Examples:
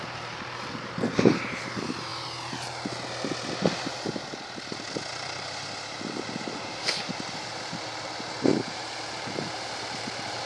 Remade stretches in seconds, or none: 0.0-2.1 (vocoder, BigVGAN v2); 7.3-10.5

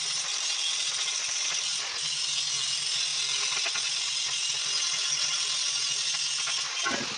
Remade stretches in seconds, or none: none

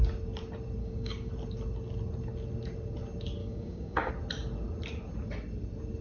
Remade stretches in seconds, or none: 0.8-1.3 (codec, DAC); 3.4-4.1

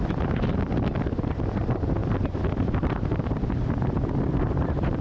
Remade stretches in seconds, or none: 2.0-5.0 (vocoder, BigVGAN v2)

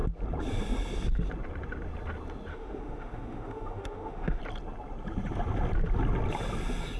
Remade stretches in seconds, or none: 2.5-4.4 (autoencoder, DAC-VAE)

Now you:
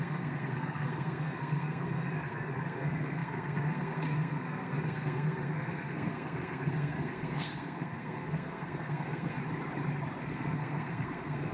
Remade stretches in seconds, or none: 0.0-9.4 (codec, SNAC); 10.2-11.5